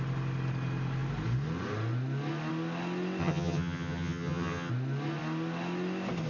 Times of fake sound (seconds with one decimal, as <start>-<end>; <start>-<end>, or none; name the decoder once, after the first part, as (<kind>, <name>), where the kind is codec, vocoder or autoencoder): 3.2-4.7 (vocoder, HiFi-GAN)